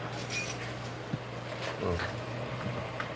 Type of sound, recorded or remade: recorded